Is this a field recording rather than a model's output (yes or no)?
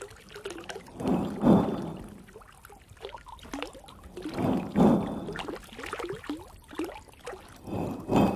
yes